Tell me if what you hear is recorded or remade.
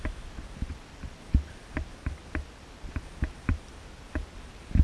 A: recorded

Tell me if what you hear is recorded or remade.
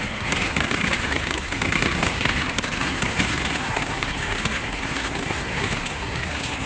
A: remade